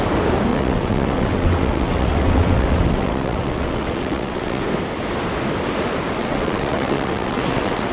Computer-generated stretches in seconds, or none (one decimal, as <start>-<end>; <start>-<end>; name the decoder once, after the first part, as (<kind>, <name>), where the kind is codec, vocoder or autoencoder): 0.5-4.6 (vocoder, WaveNeXt); 6.2-7.9